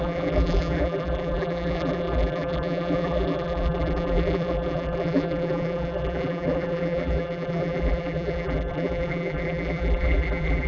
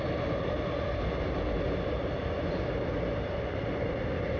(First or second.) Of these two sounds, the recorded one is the second